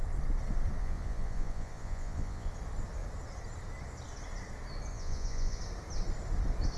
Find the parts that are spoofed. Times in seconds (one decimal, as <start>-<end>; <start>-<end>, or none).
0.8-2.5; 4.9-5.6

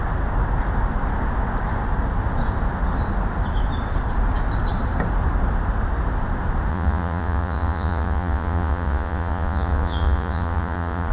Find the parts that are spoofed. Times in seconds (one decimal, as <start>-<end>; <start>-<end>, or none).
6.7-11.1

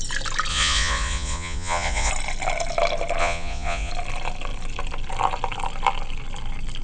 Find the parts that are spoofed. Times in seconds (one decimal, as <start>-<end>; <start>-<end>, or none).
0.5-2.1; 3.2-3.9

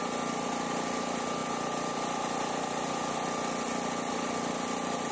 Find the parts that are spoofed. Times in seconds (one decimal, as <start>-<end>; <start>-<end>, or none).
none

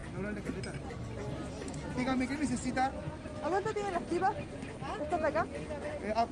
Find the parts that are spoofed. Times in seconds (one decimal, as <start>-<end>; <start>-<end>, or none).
none

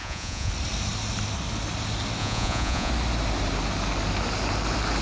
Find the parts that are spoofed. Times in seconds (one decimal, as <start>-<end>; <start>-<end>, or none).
0.0-0.5; 2.2-2.9

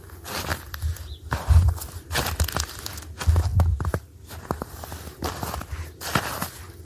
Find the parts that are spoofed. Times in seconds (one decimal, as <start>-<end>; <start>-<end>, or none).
none

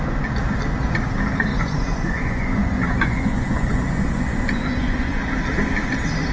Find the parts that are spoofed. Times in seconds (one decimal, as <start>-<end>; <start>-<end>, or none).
1.5-5.3